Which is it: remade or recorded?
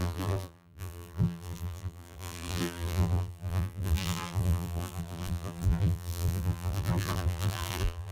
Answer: remade